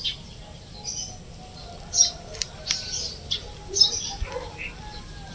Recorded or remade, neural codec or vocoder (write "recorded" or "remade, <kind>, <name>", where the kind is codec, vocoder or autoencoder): recorded